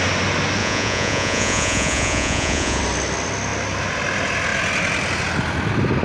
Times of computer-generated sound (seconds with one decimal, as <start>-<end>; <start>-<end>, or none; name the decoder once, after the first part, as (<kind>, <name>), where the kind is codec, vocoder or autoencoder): 0.6-2.8 (vocoder, Vocos)